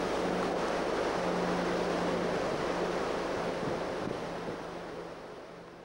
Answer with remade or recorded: recorded